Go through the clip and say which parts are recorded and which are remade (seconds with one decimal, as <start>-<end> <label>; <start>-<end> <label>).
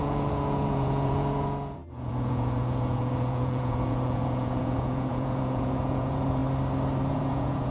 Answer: 0.0-6.4 remade; 6.4-7.1 recorded; 7.1-7.7 remade